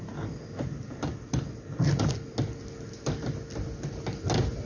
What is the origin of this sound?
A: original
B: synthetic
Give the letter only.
A